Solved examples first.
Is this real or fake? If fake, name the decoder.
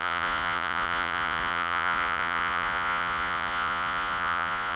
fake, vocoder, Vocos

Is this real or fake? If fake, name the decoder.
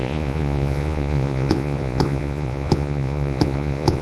fake, vocoder, Vocos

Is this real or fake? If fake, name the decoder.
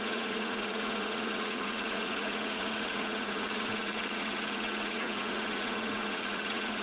fake, vocoder, Vocos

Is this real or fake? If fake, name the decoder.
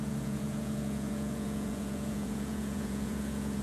fake, vocoder, Vocos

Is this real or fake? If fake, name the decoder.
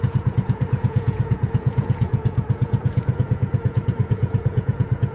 fake, vocoder, Vocos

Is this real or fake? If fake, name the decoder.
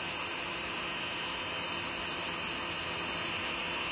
real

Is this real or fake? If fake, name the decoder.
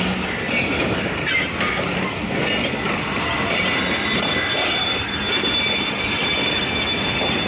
real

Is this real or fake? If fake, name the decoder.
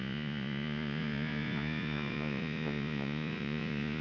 fake, vocoder, Vocos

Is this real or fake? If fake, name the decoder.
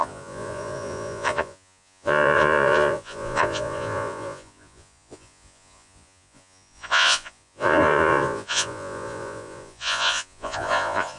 fake, vocoder, Vocos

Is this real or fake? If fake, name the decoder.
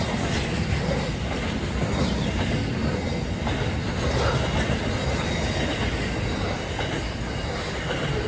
real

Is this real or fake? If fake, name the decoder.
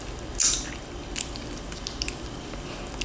real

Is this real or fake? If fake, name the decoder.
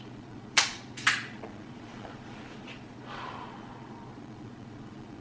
fake, vocoder, Vocos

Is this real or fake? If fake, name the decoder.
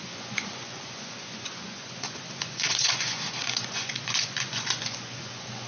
fake, vocoder, Vocos